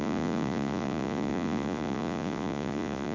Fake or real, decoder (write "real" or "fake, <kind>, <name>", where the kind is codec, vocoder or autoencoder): fake, vocoder, Vocos